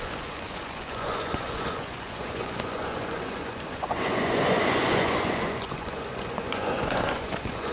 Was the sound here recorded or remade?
remade